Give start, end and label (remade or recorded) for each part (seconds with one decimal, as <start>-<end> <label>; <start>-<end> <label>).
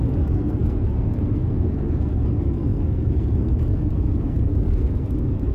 0.0-5.5 remade